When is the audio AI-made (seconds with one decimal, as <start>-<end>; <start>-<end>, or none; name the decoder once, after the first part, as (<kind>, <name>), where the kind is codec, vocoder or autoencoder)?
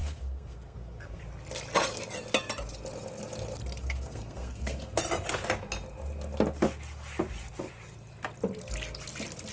0.0-1.2 (codec, SNAC); 3.8-5.0